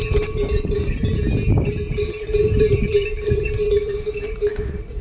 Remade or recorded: remade